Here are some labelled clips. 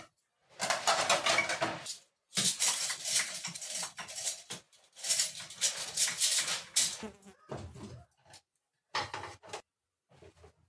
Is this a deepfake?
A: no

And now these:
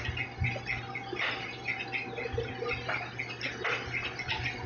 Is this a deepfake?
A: no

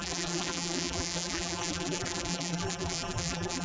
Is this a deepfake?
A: yes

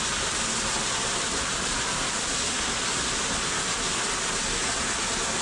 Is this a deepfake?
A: no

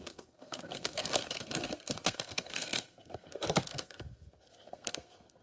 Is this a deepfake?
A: yes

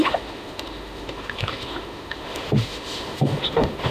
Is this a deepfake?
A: yes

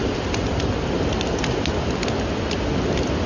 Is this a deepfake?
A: no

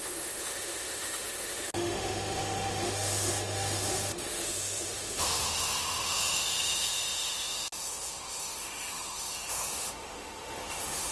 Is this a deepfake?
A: yes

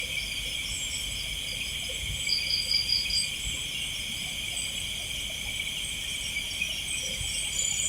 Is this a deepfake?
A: no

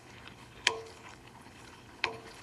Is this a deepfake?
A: yes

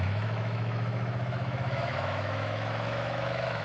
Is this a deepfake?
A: yes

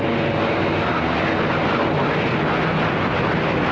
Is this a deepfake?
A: no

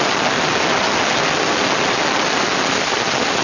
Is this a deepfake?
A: no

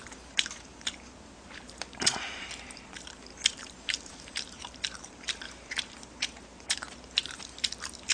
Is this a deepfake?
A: yes